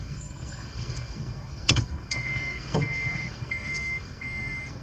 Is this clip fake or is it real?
fake